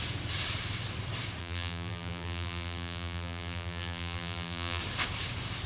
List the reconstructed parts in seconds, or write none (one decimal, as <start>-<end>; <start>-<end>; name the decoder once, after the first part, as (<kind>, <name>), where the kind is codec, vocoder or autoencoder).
1.4-4.8 (vocoder, BigVGAN v2)